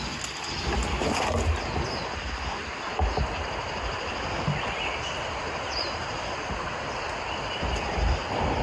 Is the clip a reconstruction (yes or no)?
no